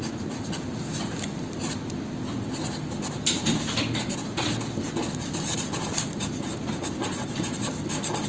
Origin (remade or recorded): recorded